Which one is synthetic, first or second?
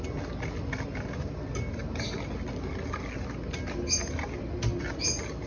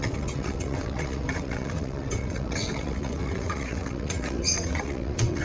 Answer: second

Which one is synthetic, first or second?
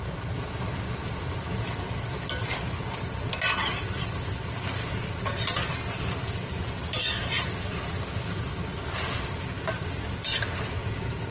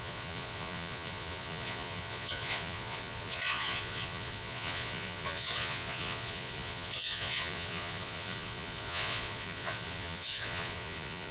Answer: second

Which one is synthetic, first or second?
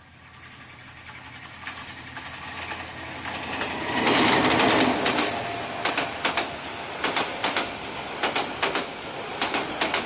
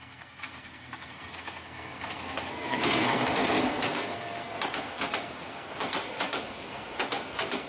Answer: second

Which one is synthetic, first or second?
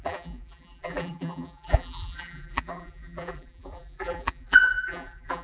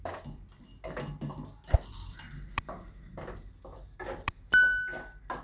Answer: first